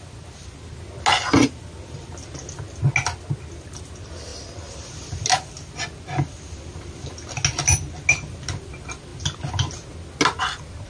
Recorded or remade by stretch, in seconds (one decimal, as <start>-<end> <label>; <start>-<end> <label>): 0.0-10.9 recorded